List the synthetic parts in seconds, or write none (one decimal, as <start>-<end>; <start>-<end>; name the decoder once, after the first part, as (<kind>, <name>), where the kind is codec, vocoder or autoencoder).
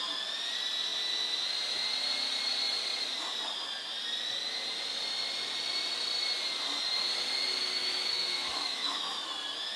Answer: 7.8-9.2 (autoencoder, DAC-VAE)